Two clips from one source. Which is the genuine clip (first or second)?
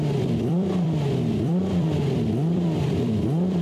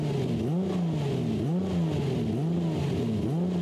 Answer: second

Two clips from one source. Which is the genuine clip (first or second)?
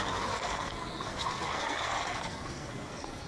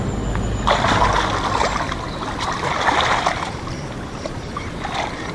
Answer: second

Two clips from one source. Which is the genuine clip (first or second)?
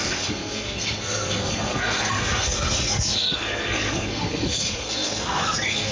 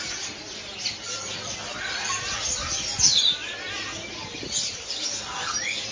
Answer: second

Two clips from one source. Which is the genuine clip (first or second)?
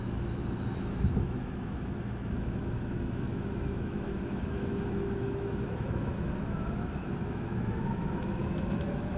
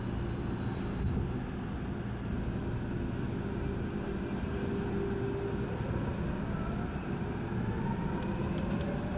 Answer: second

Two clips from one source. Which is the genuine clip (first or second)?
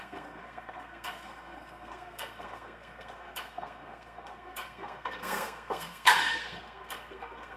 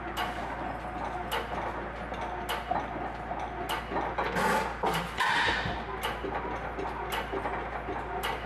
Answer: second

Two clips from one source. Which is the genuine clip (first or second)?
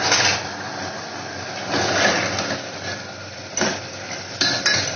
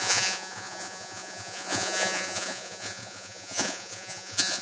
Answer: first